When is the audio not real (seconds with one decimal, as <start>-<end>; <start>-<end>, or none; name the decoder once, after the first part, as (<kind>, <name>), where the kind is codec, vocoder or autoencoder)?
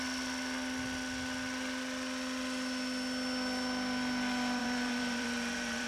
4.6-5.9 (vocoder, BigVGAN v2)